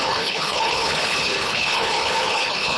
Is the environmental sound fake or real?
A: fake